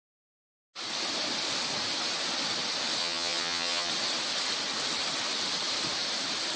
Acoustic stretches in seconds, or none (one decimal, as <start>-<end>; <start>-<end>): 0.0-3.0; 3.9-6.6